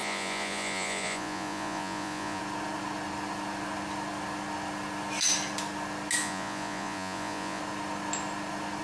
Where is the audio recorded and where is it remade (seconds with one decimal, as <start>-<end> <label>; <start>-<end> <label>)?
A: 0.0-2.4 remade; 2.4-6.2 recorded; 6.2-7.6 remade; 7.6-8.8 recorded